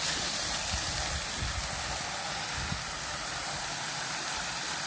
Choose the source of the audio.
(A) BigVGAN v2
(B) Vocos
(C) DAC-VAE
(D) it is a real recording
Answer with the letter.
D